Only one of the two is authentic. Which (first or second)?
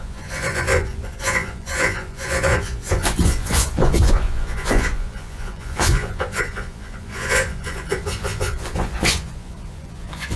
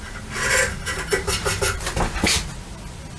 second